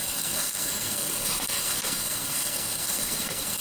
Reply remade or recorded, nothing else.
remade